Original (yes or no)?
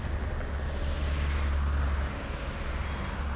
yes